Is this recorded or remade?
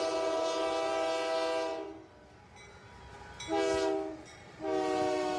recorded